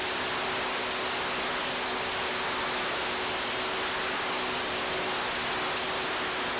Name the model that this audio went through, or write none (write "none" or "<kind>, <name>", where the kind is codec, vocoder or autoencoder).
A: none